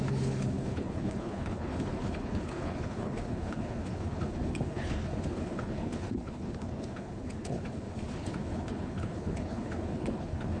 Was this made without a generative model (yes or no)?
no